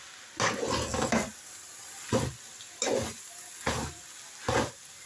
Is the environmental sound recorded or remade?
recorded